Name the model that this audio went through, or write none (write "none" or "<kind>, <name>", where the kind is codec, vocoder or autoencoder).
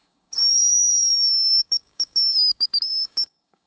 codec, DAC